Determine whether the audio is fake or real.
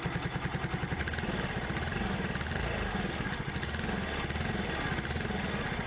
real